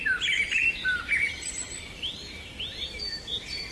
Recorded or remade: recorded